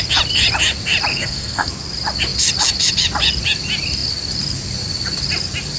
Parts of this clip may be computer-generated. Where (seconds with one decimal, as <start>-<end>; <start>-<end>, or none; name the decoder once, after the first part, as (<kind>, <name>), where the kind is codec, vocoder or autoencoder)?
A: 1.1-1.7 (codec, SNAC)